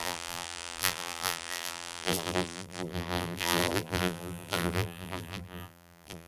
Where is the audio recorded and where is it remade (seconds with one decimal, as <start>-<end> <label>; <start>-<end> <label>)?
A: 0.0-6.3 remade